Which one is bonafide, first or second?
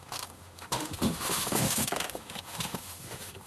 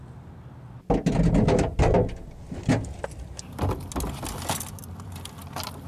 second